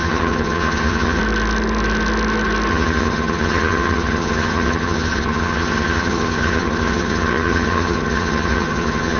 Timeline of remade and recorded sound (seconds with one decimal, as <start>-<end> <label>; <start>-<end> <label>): 0.0-1.2 remade; 1.2-2.7 recorded; 2.7-9.2 remade